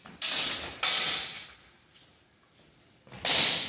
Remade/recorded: recorded